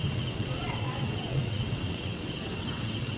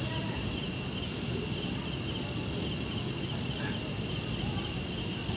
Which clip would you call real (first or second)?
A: second